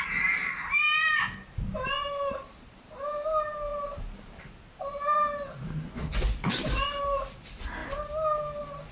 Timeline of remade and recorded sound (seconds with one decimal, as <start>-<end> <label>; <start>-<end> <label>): 0.0-8.9 recorded